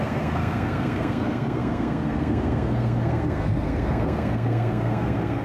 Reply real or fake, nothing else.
fake